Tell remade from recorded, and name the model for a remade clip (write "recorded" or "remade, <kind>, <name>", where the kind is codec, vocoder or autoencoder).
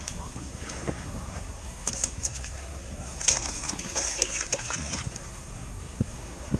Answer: remade, codec, SNAC